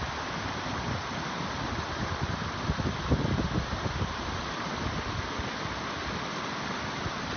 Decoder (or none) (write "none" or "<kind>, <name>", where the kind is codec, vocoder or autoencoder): none